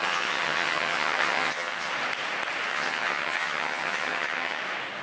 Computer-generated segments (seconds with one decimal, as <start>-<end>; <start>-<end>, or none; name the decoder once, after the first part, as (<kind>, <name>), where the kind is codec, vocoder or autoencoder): 0.0-1.9 (vocoder, HiFi-GAN); 2.7-4.6